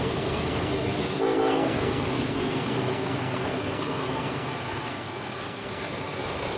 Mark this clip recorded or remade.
remade